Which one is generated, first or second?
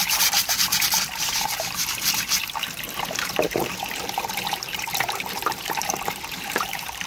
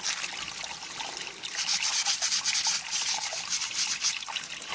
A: first